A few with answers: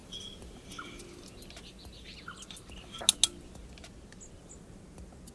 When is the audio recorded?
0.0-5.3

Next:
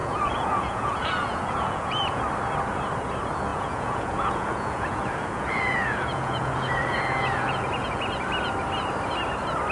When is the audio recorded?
2.2-3.5; 8.1-9.7